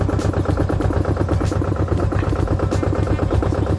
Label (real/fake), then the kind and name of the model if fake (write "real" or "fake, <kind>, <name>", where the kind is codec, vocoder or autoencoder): real